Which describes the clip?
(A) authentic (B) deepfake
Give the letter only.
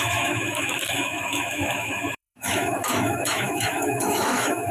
B